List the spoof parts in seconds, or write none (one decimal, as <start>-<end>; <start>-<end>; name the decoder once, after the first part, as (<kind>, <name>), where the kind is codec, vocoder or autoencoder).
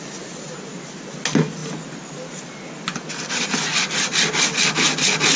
none